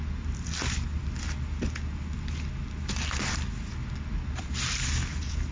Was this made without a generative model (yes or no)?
yes